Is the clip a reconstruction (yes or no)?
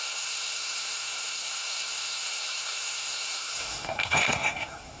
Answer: yes